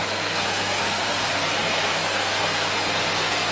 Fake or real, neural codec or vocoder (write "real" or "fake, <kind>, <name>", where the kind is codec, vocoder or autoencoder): fake, codec, SNAC